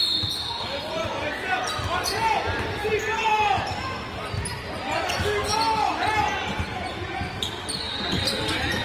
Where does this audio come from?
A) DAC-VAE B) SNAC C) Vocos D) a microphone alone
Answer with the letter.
D